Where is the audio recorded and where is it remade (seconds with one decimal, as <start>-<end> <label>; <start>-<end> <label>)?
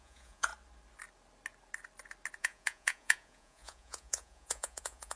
0.0-0.5 remade; 0.5-2.4 recorded; 2.4-5.2 remade